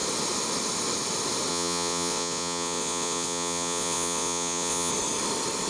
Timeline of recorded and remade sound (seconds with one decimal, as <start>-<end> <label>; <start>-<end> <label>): 0.0-1.5 recorded; 1.5-4.9 remade; 4.9-5.7 recorded